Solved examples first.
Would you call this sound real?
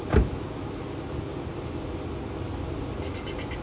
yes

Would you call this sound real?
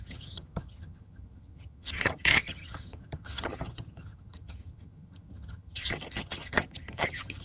no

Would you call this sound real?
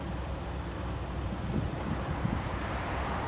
yes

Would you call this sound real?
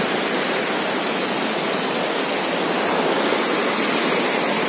yes